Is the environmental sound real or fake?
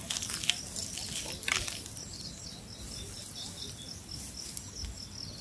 real